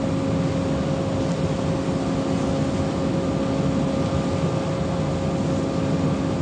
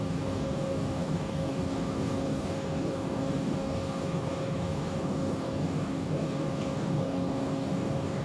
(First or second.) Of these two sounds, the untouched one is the first